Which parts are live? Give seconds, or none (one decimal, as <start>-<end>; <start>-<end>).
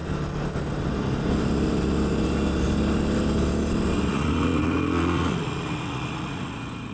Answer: 0.0-4.1